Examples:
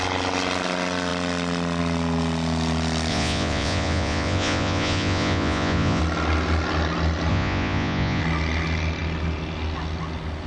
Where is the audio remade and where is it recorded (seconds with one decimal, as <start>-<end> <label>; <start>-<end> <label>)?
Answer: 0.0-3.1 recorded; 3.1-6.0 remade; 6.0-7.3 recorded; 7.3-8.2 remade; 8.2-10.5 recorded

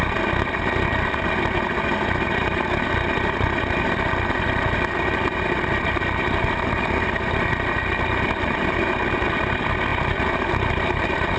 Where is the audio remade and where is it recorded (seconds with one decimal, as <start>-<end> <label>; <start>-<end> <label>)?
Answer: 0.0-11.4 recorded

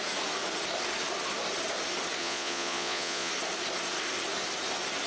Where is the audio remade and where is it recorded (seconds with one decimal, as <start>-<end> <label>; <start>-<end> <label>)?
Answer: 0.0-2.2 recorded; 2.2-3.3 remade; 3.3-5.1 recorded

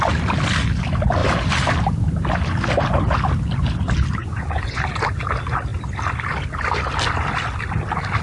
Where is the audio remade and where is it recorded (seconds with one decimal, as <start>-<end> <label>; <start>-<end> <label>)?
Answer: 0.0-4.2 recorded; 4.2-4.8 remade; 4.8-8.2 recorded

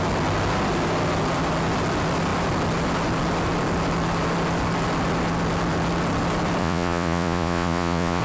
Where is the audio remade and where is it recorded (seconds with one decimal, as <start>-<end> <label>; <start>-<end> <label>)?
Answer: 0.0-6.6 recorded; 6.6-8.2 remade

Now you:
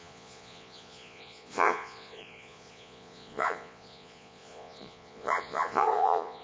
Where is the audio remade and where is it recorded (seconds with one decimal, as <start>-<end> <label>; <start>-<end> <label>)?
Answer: 0.0-6.4 remade

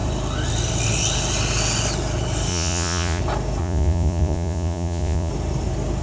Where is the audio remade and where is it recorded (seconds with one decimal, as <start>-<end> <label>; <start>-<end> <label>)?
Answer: 0.0-2.5 recorded; 2.5-3.2 remade; 3.2-3.6 recorded; 3.6-5.3 remade; 5.3-6.0 recorded